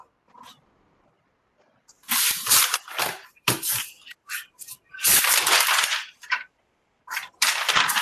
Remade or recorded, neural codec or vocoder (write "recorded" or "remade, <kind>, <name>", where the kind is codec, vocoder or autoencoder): remade, vocoder, BigVGAN v2